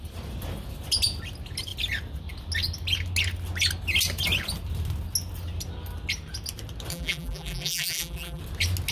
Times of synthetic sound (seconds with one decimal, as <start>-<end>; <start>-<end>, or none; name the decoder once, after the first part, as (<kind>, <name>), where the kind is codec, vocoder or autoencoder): 6.9-8.4 (vocoder, BigVGAN v2)